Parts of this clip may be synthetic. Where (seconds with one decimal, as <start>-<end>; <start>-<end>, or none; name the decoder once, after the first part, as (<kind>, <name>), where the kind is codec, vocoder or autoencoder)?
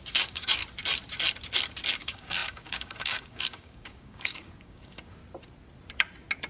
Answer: 0.0-0.6 (codec, DAC); 1.9-5.2